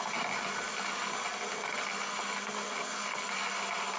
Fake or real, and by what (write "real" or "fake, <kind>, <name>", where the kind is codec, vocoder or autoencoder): real